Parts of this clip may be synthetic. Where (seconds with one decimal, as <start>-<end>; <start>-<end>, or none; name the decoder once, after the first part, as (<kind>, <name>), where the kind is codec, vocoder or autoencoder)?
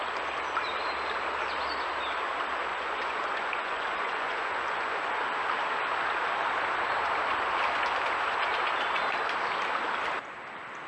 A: 2.7-5.2 (vocoder, Vocos)